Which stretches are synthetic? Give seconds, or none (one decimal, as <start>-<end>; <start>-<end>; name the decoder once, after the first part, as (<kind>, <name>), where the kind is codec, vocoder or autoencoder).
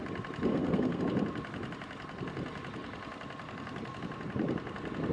0.5-1.0 (codec, SNAC)